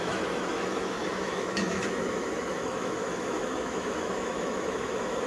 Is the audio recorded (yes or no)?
no